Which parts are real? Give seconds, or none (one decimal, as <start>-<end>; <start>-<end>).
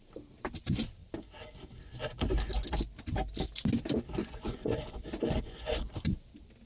0.0-4.2; 5.9-6.7